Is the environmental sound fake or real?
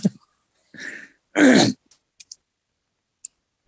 real